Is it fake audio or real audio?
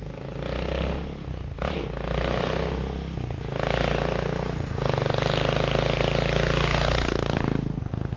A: real